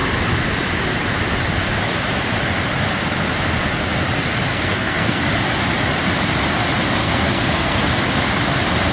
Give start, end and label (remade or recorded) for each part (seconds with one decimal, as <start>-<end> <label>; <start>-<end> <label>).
0.0-4.5 recorded; 4.5-5.2 remade; 5.2-7.0 recorded; 7.0-7.9 remade; 7.9-8.9 recorded